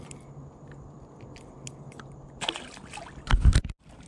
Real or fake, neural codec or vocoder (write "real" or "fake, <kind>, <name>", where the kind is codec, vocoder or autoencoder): real